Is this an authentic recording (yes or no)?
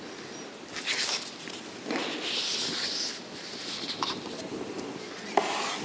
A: yes